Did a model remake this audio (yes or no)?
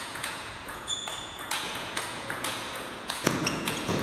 yes